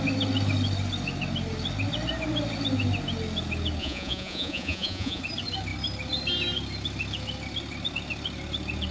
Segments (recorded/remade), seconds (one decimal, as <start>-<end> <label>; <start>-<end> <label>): 0.0-3.8 recorded; 3.8-5.2 remade; 5.2-8.9 recorded